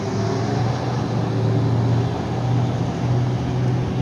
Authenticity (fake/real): real